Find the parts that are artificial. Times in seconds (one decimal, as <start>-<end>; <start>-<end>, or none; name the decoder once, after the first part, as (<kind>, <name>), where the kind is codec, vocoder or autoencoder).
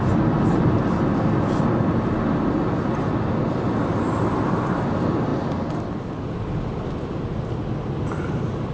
none